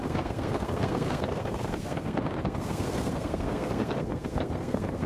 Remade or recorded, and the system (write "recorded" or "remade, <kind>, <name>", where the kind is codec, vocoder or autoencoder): remade, codec, SNAC